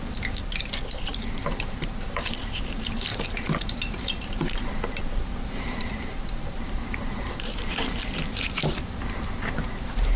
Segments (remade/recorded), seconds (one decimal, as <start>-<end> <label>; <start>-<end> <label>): 0.0-1.1 recorded; 1.1-2.4 remade; 2.4-3.1 recorded; 3.1-7.6 remade; 7.6-10.2 recorded